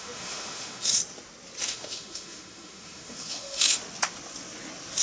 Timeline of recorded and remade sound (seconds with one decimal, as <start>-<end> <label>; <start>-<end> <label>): 0.0-1.0 remade; 1.0-1.6 recorded; 1.6-3.8 remade; 3.8-5.0 recorded